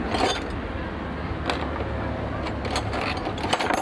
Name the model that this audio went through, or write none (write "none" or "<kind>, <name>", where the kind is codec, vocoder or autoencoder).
none